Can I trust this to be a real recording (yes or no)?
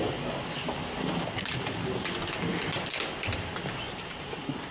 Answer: yes